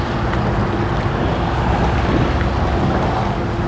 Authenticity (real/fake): real